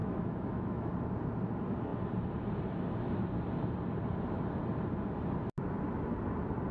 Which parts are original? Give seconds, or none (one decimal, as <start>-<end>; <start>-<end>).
0.9-6.7